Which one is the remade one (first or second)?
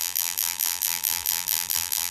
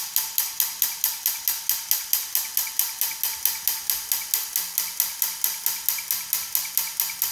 first